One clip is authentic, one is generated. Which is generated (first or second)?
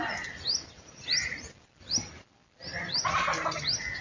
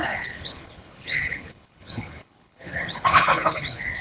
second